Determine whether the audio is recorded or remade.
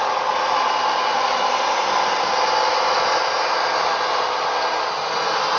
recorded